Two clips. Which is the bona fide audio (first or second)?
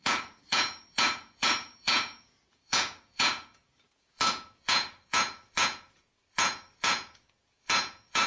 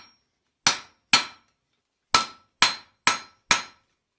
second